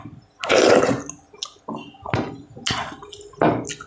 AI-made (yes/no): no